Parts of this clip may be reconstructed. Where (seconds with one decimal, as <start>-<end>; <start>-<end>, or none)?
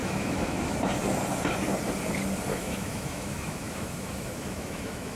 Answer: 0.0-0.9; 2.5-5.2